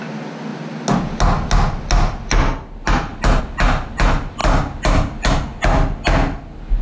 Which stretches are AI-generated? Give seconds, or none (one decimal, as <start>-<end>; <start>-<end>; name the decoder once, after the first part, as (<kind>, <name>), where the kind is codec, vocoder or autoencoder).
none